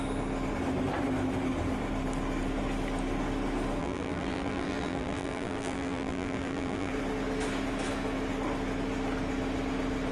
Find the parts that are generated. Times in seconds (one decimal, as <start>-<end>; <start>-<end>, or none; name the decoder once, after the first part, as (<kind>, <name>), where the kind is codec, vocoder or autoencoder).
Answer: 3.8-6.9 (vocoder, BigVGAN v2)